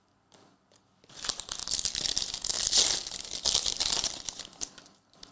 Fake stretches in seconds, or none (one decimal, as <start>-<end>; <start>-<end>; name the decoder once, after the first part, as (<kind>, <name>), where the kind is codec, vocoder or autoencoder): none